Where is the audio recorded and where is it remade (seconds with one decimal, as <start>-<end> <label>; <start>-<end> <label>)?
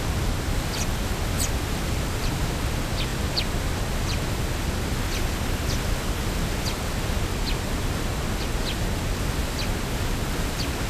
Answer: 0.0-10.9 recorded